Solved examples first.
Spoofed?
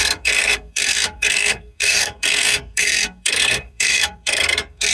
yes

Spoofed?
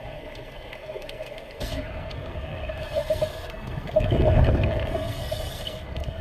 yes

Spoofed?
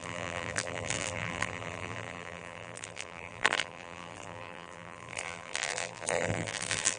yes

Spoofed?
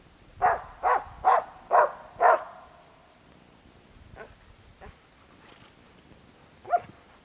no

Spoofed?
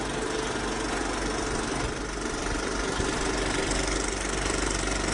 no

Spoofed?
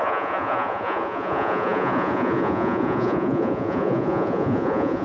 yes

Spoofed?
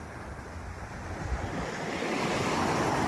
no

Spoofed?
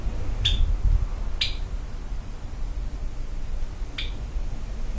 no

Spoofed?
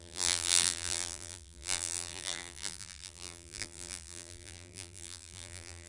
yes